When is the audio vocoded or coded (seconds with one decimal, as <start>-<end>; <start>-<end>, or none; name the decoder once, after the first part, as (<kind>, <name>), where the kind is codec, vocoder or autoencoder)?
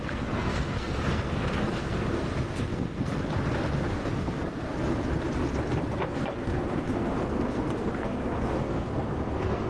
0.0-3.2 (codec, SNAC); 3.9-4.7; 5.8-9.7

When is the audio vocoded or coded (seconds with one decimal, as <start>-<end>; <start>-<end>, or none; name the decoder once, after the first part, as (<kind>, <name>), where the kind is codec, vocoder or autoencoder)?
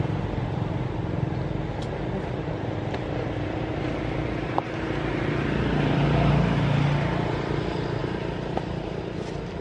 8.0-9.0 (vocoder, BigVGAN v2)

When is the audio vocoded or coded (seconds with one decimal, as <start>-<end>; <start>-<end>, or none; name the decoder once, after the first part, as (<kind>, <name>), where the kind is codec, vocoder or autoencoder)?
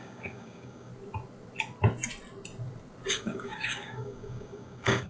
0.0-0.9 (codec, DAC); 3.1-5.1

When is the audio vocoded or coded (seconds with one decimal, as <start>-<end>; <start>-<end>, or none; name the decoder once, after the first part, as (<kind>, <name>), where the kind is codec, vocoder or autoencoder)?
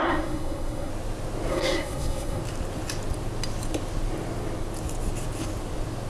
0.0-0.9 (codec, SNAC); 1.5-2.4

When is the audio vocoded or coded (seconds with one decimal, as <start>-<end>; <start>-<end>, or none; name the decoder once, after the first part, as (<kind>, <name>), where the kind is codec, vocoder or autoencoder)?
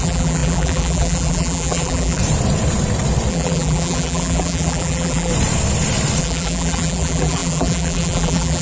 0.0-2.2 (vocoder, BigVGAN v2); 3.3-5.3; 6.2-8.6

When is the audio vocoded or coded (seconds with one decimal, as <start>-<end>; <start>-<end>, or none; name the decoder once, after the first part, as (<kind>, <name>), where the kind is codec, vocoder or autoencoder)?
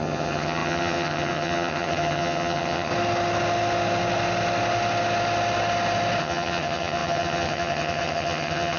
0.0-2.9 (vocoder, HiFi-GAN); 6.2-8.8